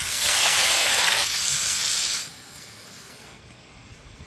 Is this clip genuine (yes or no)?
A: no